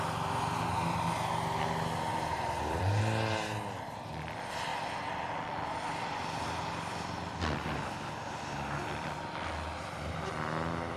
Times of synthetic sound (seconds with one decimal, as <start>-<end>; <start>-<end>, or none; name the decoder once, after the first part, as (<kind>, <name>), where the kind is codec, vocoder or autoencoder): 2.1-3.0 (vocoder, BigVGAN v2)